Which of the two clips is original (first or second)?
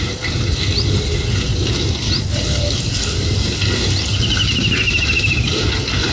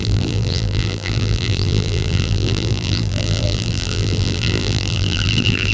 first